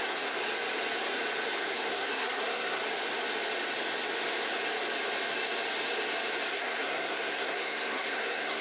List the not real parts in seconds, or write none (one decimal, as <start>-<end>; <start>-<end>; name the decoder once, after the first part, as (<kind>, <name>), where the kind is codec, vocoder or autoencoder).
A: 0.0-0.4 (codec, SNAC); 1.6-2.8; 6.5-8.6